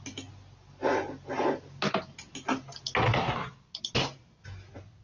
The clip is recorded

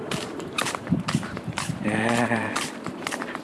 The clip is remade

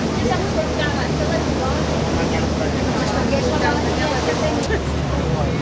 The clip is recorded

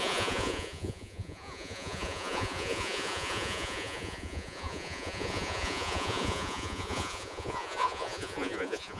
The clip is remade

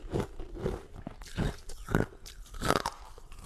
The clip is recorded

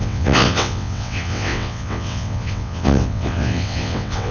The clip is remade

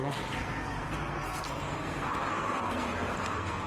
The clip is remade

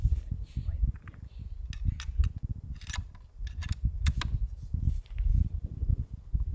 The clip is recorded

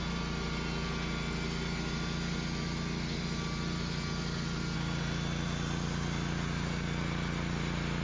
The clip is recorded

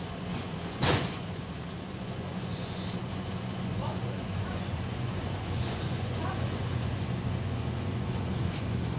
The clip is remade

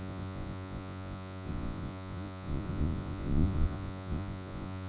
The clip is remade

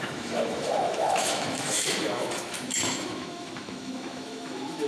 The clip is remade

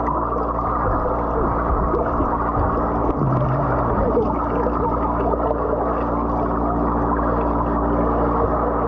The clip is recorded